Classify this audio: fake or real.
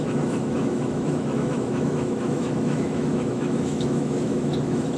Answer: fake